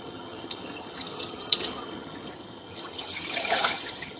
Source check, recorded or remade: remade